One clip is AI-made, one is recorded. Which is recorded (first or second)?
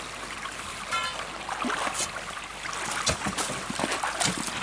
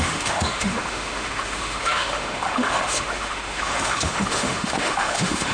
first